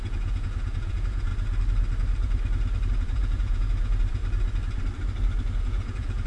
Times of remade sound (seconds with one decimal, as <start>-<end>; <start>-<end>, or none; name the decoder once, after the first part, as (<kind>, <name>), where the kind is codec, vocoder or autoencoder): 0.0-1.3 (vocoder, Vocos); 2.9-4.2; 5.6-6.3